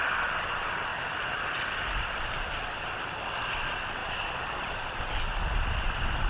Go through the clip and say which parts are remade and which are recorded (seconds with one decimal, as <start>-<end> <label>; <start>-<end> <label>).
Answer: 0.0-0.9 recorded; 0.9-3.1 remade; 3.1-4.0 recorded; 4.0-5.0 remade; 5.0-6.3 recorded